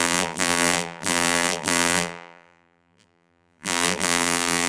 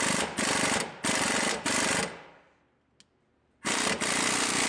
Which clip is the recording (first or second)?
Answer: second